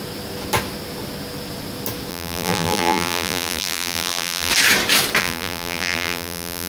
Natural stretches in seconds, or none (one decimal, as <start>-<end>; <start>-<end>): 0.0-2.1; 4.5-5.2